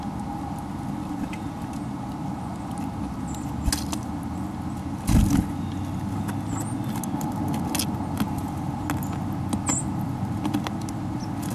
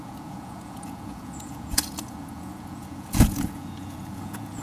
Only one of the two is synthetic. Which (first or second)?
second